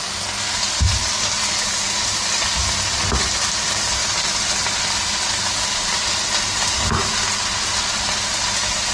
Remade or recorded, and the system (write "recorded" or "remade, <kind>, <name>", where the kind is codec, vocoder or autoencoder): recorded